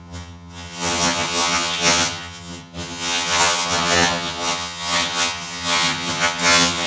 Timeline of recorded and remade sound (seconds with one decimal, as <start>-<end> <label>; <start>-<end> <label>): 0.0-6.9 remade